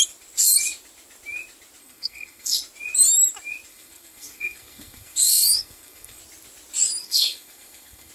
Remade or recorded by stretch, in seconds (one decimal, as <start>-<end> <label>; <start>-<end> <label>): 0.0-1.8 recorded; 1.8-2.6 remade; 2.6-3.7 recorded; 3.7-6.2 remade; 6.2-7.0 recorded; 7.0-8.1 remade